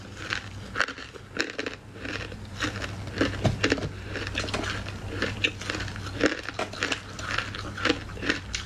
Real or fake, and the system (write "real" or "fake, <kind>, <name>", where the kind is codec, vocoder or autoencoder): real